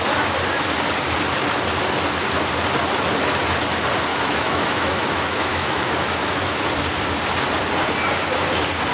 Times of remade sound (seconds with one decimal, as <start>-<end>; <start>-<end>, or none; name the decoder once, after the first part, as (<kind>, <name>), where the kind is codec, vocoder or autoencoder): 4.1-6.7 (autoencoder, DAC-VAE)